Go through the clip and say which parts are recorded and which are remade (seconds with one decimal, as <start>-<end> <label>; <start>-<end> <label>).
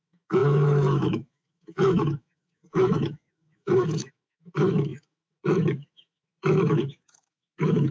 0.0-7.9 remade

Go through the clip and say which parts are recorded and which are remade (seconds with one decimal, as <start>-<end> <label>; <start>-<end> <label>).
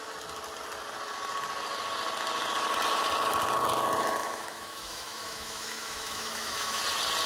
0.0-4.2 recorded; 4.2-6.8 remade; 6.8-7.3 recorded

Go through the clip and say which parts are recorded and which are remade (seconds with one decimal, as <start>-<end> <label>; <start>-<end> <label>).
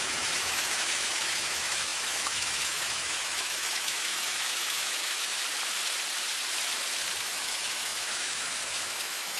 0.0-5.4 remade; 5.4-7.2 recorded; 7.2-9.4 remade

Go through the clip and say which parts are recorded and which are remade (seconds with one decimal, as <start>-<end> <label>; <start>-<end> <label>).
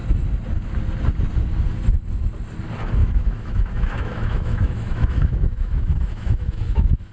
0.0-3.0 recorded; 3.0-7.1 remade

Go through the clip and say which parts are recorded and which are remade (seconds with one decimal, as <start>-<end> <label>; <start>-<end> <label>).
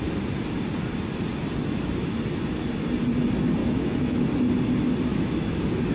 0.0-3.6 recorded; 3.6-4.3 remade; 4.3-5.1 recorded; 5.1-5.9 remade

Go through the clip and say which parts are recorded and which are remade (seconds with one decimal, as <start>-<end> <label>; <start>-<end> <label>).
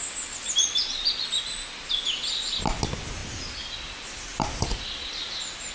0.0-5.7 recorded